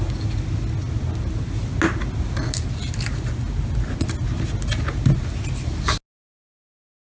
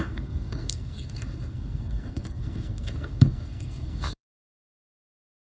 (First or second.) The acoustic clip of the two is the first